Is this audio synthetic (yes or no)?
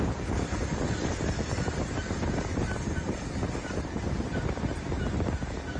no